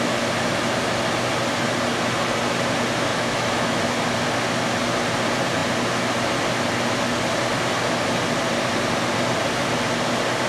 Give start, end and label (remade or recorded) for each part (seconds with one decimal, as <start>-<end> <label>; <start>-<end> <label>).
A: 0.0-3.1 recorded; 3.1-3.8 remade; 3.8-10.5 recorded